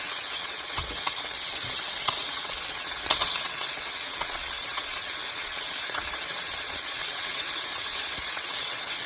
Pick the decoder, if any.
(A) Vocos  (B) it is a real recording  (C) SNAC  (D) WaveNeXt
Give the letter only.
D